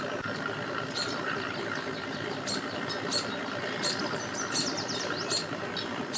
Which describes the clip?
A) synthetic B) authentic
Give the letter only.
B